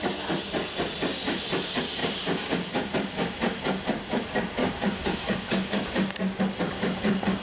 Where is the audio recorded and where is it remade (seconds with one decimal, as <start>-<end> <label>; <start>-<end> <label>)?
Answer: 0.0-2.0 recorded; 2.0-2.9 remade; 2.9-4.6 recorded; 4.6-6.4 remade; 6.4-7.4 recorded